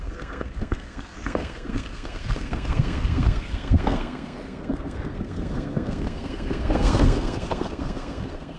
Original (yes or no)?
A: no